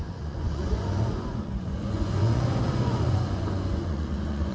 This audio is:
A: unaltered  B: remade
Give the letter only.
B